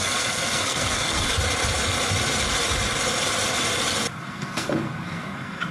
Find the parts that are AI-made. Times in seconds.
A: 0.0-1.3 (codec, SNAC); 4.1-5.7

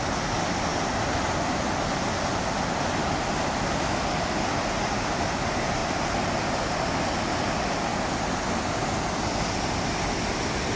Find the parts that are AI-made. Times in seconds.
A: none

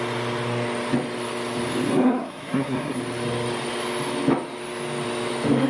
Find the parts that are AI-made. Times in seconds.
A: 1.9-3.0 (codec, SNAC)

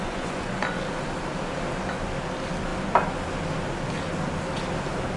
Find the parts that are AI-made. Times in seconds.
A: 0.0-0.6 (vocoder, Vocos)